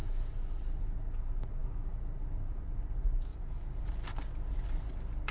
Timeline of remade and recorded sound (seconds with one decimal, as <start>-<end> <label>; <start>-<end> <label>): 0.0-3.3 recorded; 3.3-3.9 remade; 3.9-5.3 recorded